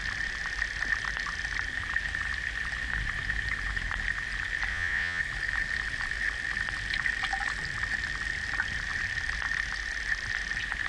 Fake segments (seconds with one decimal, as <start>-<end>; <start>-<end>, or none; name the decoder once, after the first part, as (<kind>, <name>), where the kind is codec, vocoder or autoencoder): 4.7-5.2 (vocoder, Vocos)

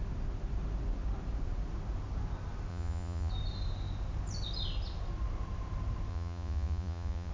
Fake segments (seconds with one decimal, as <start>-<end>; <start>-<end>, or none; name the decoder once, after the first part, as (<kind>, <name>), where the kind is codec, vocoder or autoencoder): 2.7-3.3 (vocoder, Vocos); 6.1-7.3

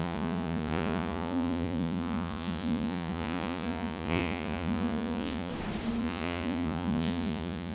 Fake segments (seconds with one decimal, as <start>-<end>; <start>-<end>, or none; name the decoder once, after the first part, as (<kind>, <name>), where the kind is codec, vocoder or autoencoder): 0.0-5.5 (vocoder, Vocos); 6.0-7.7